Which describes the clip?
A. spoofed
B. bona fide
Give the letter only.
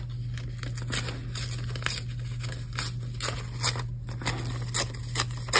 B